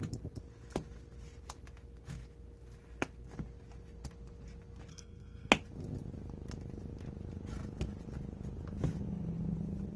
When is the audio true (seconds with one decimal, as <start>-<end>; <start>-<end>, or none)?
0.0-4.9; 5.5-10.0